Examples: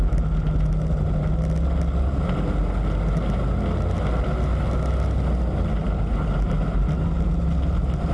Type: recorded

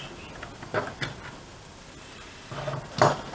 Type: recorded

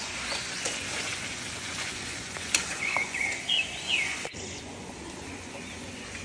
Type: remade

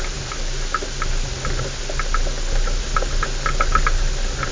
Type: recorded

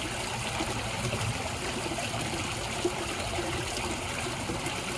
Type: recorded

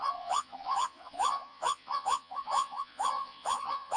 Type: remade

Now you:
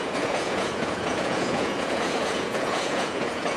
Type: remade